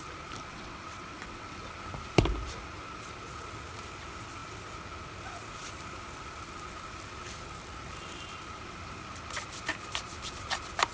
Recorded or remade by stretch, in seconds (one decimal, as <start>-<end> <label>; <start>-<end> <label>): 0.0-0.5 recorded; 0.5-1.6 remade; 1.6-10.9 recorded